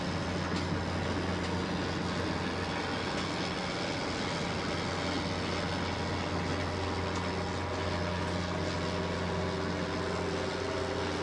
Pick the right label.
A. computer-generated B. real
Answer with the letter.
B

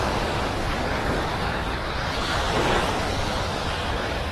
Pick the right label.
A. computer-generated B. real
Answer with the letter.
A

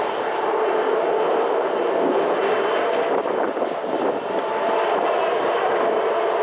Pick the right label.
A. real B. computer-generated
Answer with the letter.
A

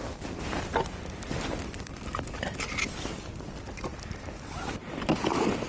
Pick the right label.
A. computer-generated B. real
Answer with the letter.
B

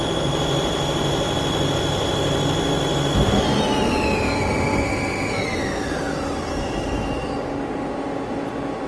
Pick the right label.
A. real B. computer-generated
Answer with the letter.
A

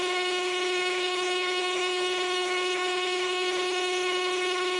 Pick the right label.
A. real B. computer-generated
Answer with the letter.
B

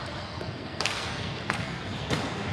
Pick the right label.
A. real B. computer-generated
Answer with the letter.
B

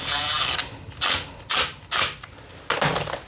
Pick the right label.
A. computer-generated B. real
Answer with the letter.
B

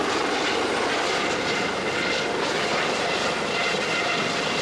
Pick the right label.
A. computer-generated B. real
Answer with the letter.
B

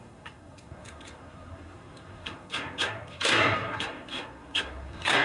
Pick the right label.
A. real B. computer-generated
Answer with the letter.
B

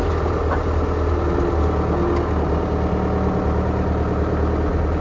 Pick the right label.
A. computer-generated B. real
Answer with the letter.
B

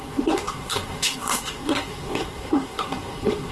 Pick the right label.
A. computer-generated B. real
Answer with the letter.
A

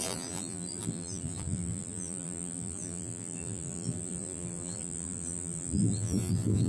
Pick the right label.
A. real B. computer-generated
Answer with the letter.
B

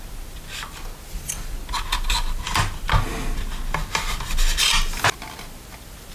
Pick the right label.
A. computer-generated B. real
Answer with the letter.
B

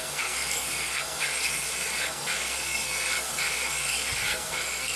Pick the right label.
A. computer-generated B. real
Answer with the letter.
A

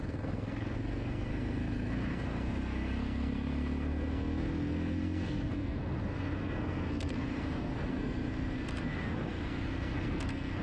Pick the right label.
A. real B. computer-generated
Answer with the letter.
B